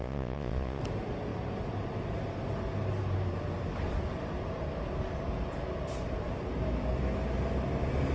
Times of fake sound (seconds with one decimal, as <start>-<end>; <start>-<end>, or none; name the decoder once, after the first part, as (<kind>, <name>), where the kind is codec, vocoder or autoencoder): 0.0-0.8 (vocoder, Vocos)